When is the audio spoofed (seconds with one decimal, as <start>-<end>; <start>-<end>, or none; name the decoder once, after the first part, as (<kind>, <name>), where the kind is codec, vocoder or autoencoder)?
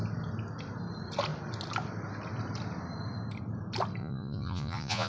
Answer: 4.0-5.1 (vocoder, Vocos)